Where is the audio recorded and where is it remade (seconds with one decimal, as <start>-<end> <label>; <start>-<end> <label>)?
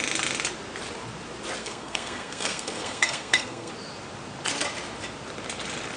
0.0-1.6 recorded; 1.6-3.7 remade; 3.7-6.0 recorded